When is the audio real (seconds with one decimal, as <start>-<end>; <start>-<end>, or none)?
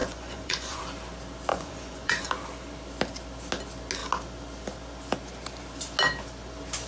0.8-1.5; 2.3-6.9